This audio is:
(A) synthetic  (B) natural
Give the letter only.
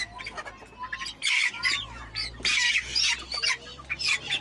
B